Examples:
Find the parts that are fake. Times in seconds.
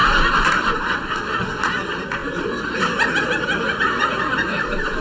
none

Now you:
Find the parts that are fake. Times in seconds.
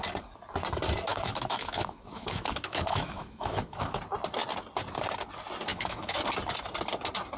1.1-4.0; 5.7-6.2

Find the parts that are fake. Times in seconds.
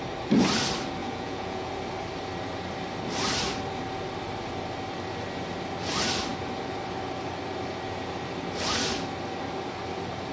1.0-1.7